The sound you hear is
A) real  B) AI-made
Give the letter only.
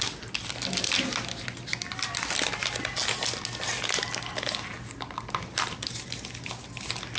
A